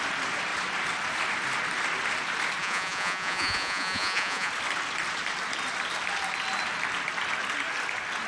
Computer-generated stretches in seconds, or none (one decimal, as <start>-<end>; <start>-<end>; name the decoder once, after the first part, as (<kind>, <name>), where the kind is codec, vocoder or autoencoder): 2.6-4.5 (vocoder, Vocos)